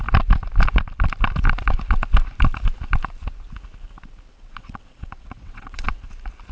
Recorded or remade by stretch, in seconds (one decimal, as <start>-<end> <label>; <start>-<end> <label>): 0.0-4.3 recorded; 4.3-5.9 remade; 5.9-6.5 recorded